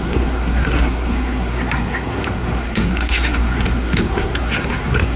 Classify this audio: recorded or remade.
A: remade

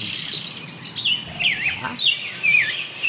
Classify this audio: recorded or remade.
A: recorded